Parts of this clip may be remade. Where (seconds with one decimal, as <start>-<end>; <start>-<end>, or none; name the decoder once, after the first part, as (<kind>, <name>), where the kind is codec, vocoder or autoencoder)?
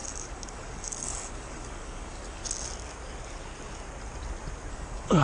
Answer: 0.0-2.4 (codec, DAC); 4.7-5.2